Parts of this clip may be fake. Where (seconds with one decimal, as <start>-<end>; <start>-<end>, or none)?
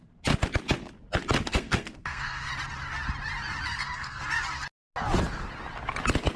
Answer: 1.5-2.5; 3.7-4.2